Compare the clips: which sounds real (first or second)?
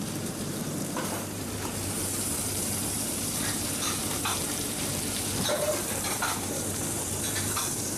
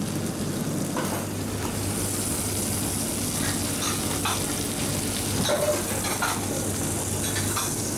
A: second